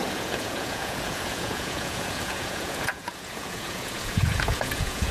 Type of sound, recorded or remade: remade